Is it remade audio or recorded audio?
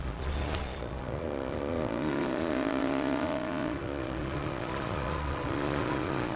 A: remade